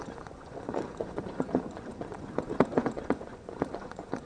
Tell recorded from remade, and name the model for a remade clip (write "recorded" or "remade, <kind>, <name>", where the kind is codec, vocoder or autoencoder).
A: remade, vocoder, Vocos